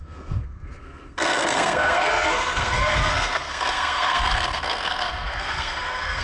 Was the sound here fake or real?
fake